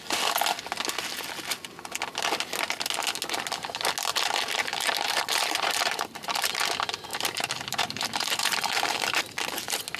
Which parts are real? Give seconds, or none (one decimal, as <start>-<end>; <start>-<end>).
0.0-4.1; 6.6-7.1; 9.2-10.0